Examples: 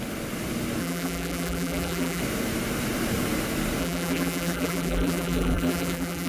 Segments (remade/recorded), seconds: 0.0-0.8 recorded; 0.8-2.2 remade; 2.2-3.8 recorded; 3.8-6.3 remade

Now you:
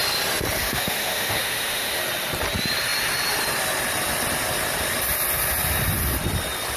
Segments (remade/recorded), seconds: 0.0-0.6 recorded; 0.6-2.0 remade; 2.0-6.8 recorded

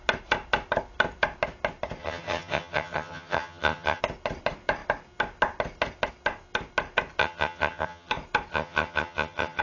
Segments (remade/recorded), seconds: 0.0-2.0 recorded; 2.0-4.0 remade; 4.0-7.2 recorded; 7.2-8.1 remade; 8.1-8.5 recorded; 8.5-9.6 remade